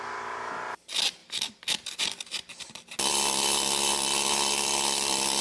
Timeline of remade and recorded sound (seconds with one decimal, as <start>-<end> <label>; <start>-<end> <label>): 0.0-5.4 recorded